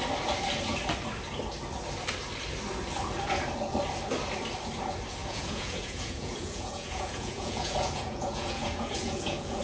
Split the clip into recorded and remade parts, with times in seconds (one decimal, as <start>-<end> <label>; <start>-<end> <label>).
0.0-5.2 recorded; 5.2-9.6 remade